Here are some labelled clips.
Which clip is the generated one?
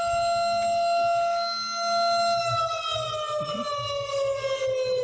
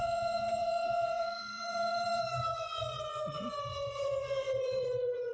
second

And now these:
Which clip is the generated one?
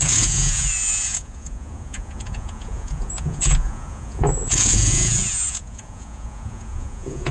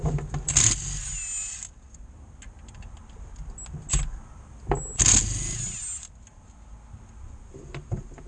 first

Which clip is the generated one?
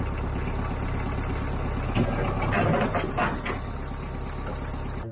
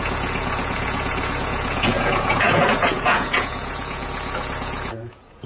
second